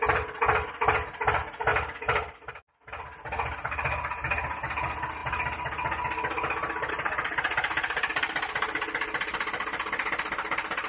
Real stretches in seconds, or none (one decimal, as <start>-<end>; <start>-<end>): 0.0-10.9